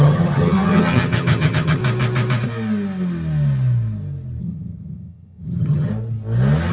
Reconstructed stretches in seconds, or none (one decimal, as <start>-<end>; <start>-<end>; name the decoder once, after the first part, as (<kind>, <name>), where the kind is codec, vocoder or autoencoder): 0.0-1.8 (vocoder, HiFi-GAN); 4.4-5.9